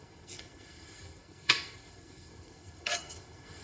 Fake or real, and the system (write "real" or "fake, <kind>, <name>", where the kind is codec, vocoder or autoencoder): fake, codec, SNAC